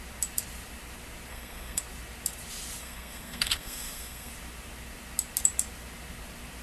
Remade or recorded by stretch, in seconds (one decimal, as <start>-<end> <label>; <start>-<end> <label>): 0.0-1.3 recorded; 1.3-1.8 remade; 1.8-2.8 recorded; 2.8-4.3 remade; 4.3-6.6 recorded